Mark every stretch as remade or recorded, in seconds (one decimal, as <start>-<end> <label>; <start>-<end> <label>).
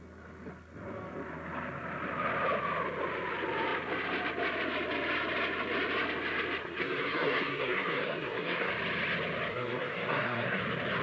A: 0.0-6.6 recorded; 6.6-8.7 remade; 8.7-9.5 recorded; 9.5-10.6 remade; 10.6-11.0 recorded